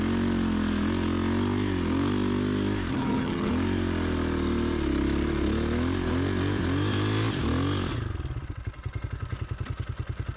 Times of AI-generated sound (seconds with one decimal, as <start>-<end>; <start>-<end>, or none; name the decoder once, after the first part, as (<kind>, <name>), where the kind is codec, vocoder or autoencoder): 2.9-3.5 (vocoder, HiFi-GAN)